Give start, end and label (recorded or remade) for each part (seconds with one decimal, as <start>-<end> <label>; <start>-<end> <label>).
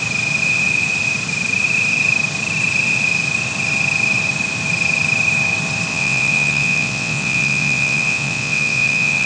0.0-5.9 recorded; 5.9-9.3 remade